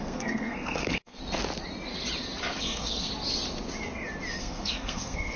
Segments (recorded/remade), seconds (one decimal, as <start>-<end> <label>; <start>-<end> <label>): 0.0-1.2 remade; 1.2-2.6 recorded; 2.6-3.1 remade; 3.1-4.4 recorded; 4.4-5.4 remade